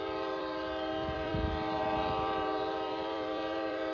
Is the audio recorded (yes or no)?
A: no